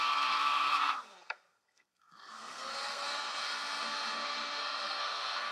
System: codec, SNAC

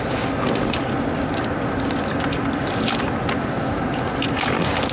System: none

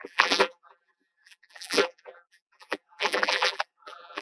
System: vocoder, BigVGAN v2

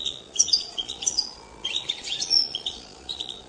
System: vocoder, Vocos